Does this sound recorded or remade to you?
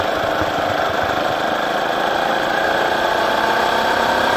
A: recorded